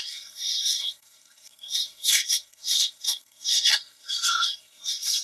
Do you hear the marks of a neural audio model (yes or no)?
yes